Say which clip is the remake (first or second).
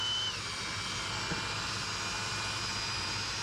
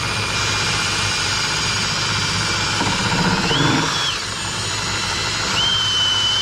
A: second